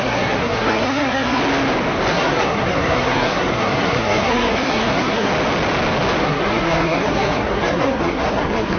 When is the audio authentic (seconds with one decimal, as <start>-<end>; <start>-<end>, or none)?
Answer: 1.4-2.1; 5.3-6.2

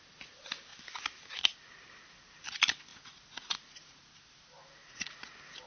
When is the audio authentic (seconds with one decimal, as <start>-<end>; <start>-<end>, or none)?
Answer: 0.0-2.9; 4.0-4.7; 5.3-5.7

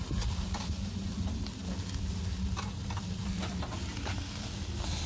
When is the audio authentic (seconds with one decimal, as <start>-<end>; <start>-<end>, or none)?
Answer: 0.0-5.1

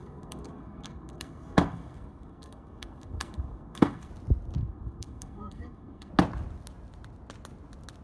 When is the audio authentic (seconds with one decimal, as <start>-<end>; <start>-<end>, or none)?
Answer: 4.1-4.6; 6.1-8.0

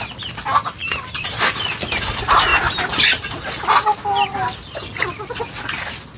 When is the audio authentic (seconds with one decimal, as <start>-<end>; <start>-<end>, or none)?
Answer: 0.0-6.2